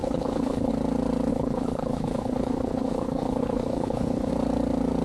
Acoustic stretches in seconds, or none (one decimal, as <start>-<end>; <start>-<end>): 0.7-1.3; 4.3-5.0